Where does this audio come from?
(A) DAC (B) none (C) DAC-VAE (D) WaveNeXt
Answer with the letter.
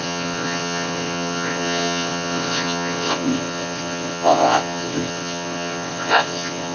D